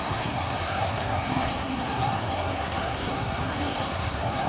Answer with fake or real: fake